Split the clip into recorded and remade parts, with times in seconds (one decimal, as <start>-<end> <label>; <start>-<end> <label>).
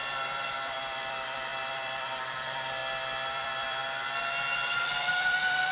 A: 0.0-2.8 remade; 2.8-3.3 recorded; 3.3-3.8 remade; 3.8-4.8 recorded; 4.8-5.7 remade